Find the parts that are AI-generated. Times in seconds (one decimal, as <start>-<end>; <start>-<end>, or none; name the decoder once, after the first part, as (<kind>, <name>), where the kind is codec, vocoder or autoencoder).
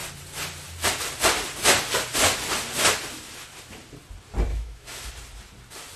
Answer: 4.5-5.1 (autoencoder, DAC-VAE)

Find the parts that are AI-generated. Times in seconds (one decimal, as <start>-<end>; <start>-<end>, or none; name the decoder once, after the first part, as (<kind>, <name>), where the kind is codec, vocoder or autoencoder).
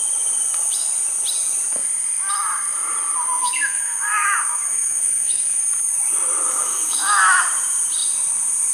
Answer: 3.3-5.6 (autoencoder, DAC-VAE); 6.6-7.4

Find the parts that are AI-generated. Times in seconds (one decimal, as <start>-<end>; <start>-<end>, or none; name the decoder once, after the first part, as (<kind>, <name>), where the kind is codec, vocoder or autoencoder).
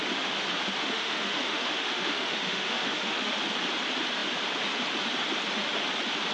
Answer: 0.8-3.4 (autoencoder, DAC-VAE)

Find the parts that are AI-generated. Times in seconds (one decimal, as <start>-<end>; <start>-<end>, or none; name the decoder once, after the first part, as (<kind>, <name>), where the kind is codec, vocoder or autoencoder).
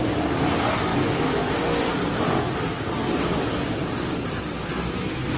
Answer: 0.9-1.5 (autoencoder, DAC-VAE)